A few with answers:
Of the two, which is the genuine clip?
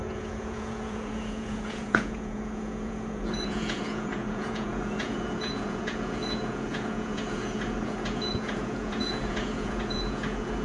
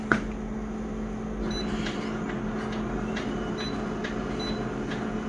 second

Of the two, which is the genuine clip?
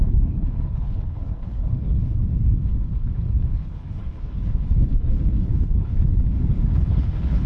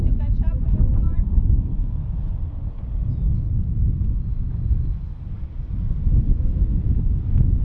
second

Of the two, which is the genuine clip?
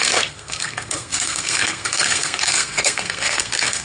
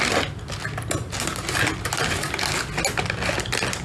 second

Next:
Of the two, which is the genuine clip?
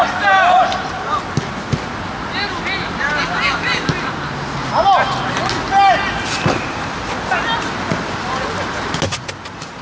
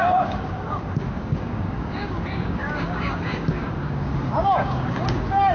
first